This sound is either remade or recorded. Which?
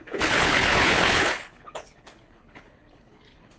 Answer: remade